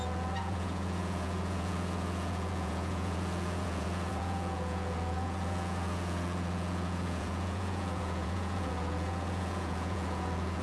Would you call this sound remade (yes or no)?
yes